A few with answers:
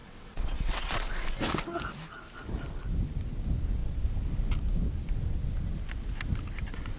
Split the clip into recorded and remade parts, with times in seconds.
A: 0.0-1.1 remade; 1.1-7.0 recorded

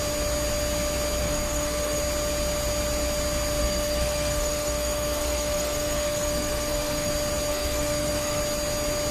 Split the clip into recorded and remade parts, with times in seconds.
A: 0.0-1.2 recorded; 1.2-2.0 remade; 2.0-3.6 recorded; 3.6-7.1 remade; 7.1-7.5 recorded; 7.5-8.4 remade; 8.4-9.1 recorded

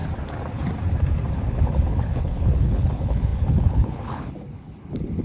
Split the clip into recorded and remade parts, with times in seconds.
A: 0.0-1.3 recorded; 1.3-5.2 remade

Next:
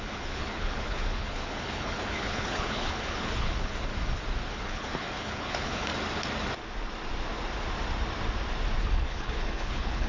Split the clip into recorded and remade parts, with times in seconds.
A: 0.0-3.9 remade; 3.9-4.5 recorded; 4.5-5.9 remade; 5.9-8.8 recorded; 8.8-10.1 remade